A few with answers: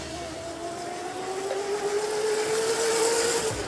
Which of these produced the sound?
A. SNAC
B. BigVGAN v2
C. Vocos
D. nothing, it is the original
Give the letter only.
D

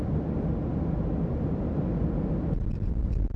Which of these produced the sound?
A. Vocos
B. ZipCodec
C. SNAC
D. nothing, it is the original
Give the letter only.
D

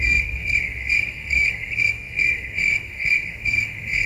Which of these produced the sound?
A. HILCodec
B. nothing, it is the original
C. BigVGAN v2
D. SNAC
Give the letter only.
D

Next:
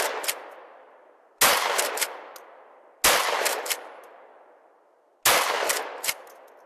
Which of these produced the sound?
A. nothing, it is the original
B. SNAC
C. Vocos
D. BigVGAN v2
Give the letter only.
A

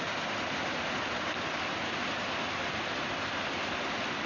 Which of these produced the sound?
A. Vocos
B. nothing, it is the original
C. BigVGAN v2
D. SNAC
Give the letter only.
B